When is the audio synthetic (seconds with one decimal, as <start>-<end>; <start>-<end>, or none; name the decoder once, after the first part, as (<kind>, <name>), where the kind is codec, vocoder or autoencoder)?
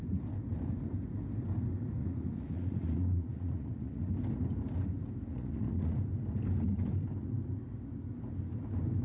2.0-4.1 (vocoder, Vocos); 5.3-6.0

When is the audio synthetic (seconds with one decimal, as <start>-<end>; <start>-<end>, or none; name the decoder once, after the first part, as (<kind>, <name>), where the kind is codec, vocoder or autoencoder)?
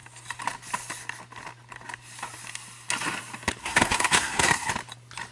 3.6-4.7 (codec, SNAC)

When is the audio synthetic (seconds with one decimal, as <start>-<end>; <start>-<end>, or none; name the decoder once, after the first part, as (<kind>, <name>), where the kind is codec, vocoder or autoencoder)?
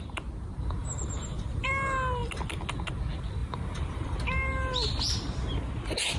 0.8-1.7 (vocoder, BigVGAN v2); 3.4-4.1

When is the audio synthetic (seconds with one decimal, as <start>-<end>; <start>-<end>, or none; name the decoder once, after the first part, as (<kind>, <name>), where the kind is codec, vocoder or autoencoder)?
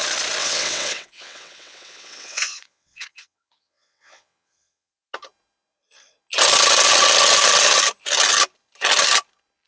0.4-4.9 (vocoder, WaveNeXt)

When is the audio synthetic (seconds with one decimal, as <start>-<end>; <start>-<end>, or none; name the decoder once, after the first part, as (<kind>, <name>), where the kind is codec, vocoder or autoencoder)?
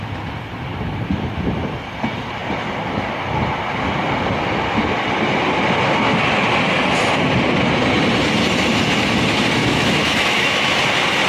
9.6-10.8 (autoencoder, DAC-VAE)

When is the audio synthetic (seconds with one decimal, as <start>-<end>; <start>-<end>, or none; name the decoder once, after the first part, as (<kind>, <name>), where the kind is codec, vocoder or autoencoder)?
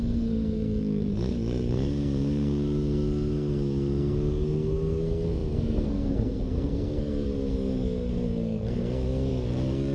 0.0-9.9 (codec, SNAC)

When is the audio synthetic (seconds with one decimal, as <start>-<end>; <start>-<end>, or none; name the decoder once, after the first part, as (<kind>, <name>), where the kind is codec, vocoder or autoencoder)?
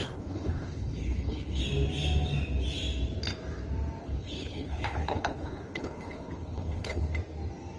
0.0-1.6 (codec, HILCodec); 4.0-7.0